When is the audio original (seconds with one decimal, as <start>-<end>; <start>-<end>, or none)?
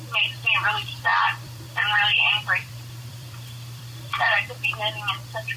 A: 0.0-1.1; 4.5-5.6